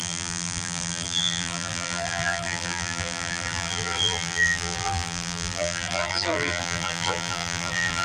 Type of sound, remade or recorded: remade